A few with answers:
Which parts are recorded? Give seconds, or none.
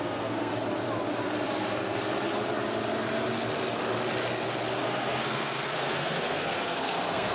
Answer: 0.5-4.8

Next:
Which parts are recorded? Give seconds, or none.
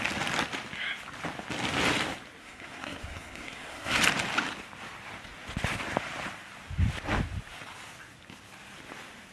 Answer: 0.0-2.4; 4.0-9.3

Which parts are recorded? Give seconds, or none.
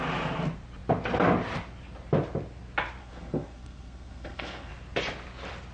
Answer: 0.0-3.0; 4.7-5.7